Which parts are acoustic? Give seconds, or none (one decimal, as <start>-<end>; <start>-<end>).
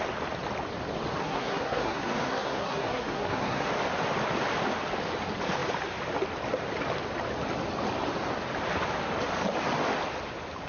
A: 0.0-1.2; 3.7-10.7